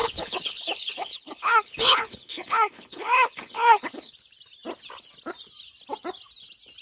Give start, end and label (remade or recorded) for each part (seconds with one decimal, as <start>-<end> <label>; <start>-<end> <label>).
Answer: 0.0-4.1 remade; 4.1-6.8 recorded